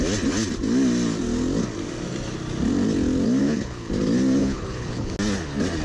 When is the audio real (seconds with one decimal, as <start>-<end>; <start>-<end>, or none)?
0.0-3.4; 3.9-4.4; 5.1-5.8

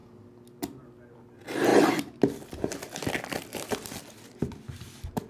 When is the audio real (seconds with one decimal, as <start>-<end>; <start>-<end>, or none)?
0.0-5.3

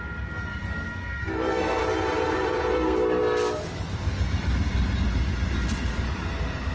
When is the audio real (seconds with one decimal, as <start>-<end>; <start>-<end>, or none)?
0.0-1.2; 1.8-2.7; 3.2-6.7